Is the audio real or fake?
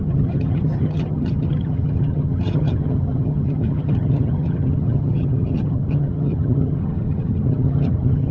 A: fake